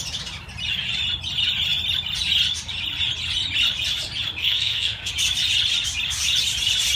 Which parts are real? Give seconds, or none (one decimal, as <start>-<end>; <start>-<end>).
0.0-4.4; 5.1-7.0